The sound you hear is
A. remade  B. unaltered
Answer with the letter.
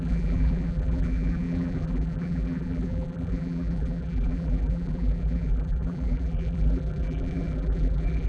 A